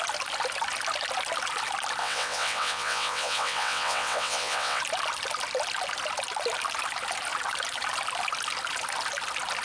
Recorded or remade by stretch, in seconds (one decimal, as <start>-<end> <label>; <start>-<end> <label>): 0.0-2.0 recorded; 2.0-4.8 remade; 4.8-9.6 recorded